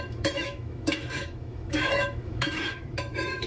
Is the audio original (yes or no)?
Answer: no